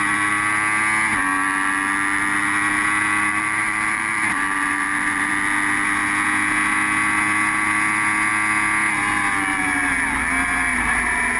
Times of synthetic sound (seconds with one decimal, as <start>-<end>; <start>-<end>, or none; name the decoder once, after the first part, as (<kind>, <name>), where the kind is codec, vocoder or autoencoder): 3.3-5.3 (vocoder, BigVGAN v2); 10.7-11.4